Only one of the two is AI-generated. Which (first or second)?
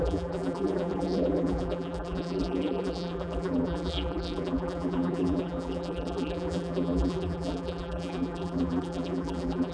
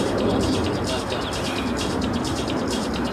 first